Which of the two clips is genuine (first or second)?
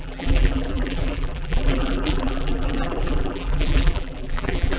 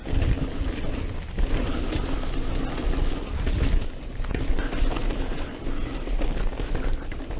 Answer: second